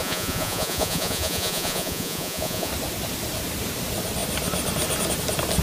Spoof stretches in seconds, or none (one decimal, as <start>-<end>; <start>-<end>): 0.0-2.7